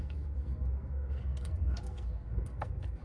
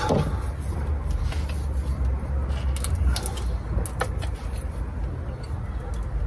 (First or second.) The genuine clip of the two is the second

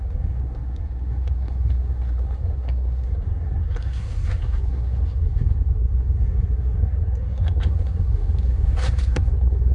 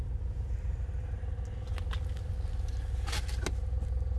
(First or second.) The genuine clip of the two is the second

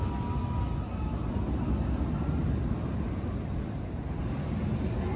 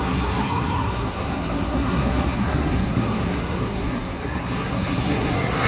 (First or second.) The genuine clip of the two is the first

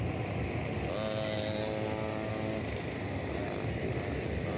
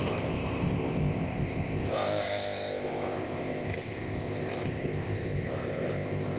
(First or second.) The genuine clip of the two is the first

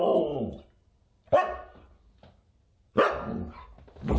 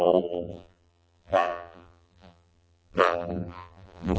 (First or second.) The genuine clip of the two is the first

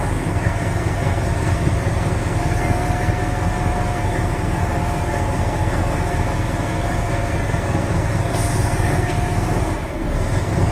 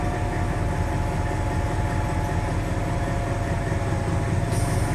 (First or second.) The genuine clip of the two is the second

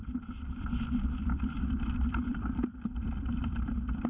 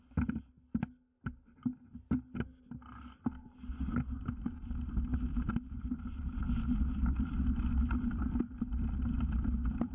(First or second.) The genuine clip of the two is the second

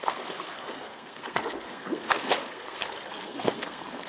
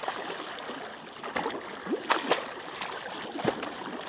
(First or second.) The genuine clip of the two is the second